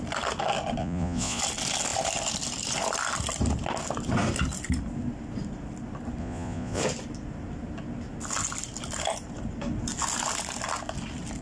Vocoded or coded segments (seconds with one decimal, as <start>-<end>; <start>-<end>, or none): 0.8-1.4; 6.2-6.8